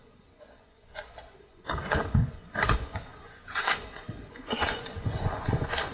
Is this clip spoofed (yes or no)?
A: yes